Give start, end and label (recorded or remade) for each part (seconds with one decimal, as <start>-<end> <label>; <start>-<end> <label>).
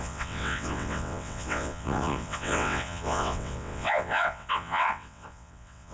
0.0-5.9 remade